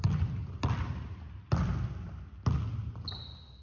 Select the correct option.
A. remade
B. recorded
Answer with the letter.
B